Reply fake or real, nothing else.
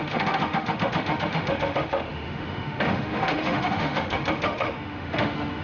fake